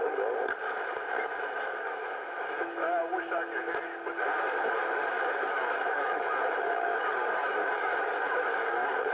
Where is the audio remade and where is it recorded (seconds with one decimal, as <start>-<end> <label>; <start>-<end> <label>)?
0.0-3.0 remade; 3.0-4.6 recorded; 4.6-9.1 remade